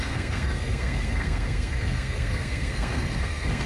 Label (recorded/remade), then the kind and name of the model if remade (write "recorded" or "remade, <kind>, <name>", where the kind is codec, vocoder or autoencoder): remade, codec, SNAC